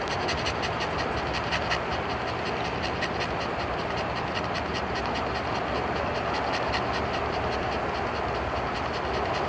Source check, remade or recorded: recorded